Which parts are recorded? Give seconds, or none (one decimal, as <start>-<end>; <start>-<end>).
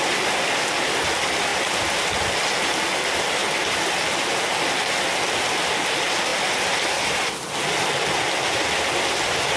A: 0.0-9.6